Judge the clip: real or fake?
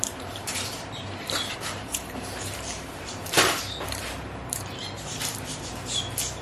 fake